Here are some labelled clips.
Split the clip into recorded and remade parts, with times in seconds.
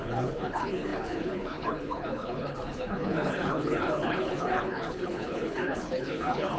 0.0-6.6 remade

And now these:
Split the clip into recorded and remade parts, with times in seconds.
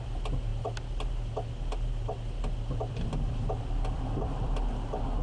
0.0-0.5 remade; 0.5-2.9 recorded; 2.9-5.2 remade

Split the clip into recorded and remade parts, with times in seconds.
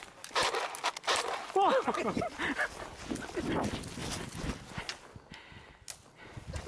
0.0-6.7 recorded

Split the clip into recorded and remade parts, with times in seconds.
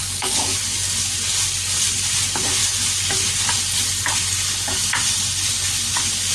0.0-0.6 remade; 0.6-6.3 recorded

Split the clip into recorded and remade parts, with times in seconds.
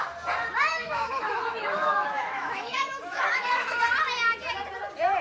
0.0-0.7 recorded; 0.7-3.8 remade; 3.8-5.2 recorded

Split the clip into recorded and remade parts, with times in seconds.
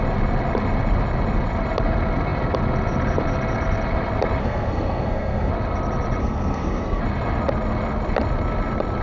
0.0-4.4 recorded; 4.4-5.5 remade; 5.5-6.2 recorded; 6.2-7.0 remade; 7.0-9.0 recorded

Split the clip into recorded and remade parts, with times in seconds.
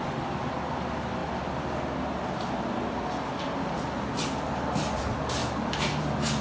0.0-6.4 recorded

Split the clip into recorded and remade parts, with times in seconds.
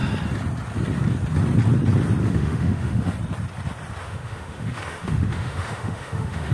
0.0-2.2 recorded; 2.2-3.1 remade; 3.1-4.0 recorded; 4.0-6.5 remade